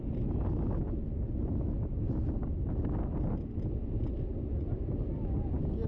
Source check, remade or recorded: recorded